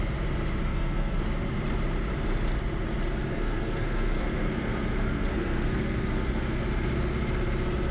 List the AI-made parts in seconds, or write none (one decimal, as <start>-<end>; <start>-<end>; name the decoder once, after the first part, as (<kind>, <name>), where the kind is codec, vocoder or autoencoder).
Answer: 0.7-1.2 (codec, SNAC); 3.3-6.6